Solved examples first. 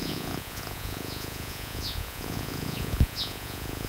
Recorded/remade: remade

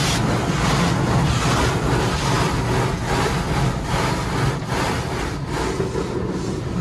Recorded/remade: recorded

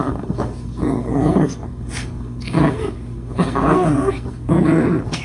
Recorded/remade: remade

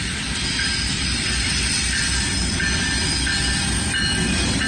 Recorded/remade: recorded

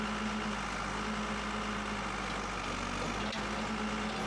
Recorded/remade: recorded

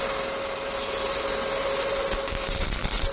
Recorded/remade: recorded